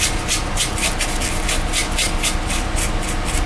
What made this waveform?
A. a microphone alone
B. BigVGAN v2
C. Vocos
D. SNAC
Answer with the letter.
A